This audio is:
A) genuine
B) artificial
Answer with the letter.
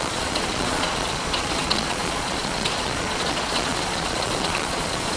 B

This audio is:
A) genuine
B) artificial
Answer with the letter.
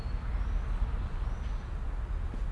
A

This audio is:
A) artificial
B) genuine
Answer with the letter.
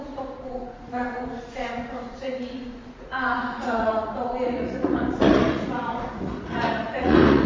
A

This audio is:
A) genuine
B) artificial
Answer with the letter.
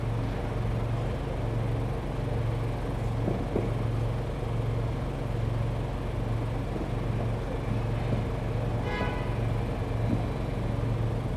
A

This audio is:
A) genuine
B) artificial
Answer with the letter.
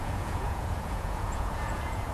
B